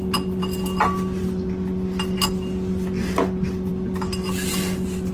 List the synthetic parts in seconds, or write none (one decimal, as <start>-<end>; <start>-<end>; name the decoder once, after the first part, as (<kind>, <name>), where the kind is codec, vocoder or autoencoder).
none